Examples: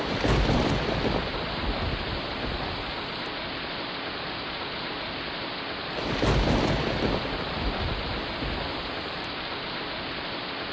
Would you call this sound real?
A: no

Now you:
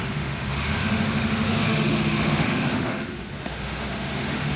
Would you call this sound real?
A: no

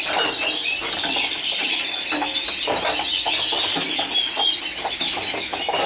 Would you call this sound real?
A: yes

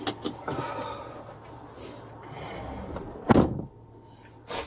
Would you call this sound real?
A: yes